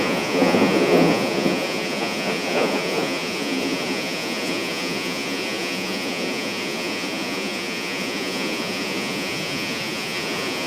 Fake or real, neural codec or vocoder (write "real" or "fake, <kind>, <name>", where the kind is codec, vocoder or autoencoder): fake, vocoder, Vocos